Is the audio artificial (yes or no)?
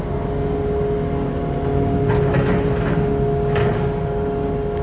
no